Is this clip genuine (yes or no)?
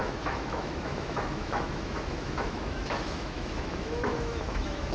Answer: no